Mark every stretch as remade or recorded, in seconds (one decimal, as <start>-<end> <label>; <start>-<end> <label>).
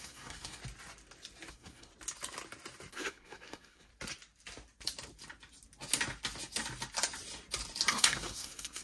0.0-0.6 remade; 0.6-1.5 recorded; 1.5-1.9 remade; 1.9-2.9 recorded; 2.9-3.9 remade; 3.9-7.9 recorded; 7.9-8.8 remade